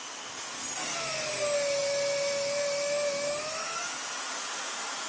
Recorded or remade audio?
recorded